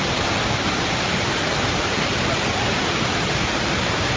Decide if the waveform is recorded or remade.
recorded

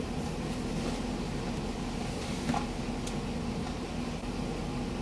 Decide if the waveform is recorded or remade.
recorded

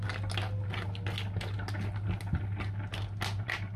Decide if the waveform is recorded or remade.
recorded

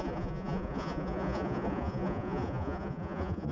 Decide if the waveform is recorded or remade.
remade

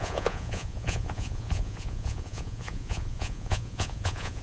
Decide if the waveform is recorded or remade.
remade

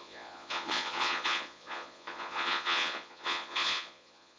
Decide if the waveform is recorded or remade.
remade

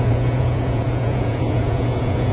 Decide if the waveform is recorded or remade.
remade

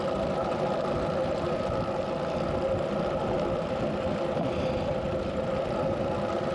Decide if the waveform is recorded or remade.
recorded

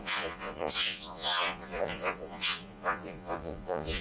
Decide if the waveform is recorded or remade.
remade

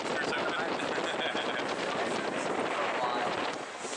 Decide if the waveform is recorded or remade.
recorded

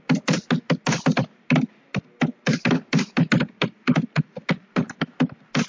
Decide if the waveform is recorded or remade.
recorded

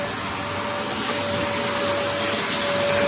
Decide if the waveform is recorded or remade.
recorded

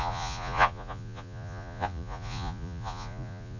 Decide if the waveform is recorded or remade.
remade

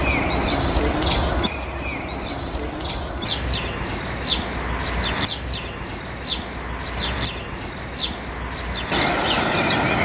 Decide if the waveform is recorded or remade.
recorded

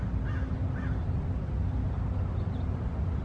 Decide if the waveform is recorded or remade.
recorded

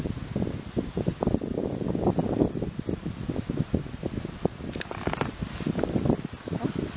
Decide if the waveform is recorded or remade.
recorded